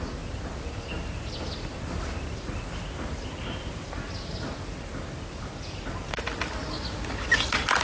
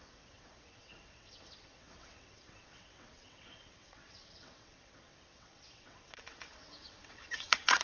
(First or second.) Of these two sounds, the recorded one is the first